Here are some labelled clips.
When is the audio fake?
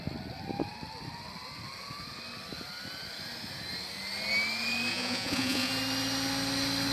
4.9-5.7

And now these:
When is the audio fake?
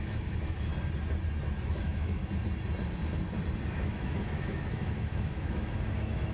0.0-0.7; 1.7-2.2; 3.7-6.3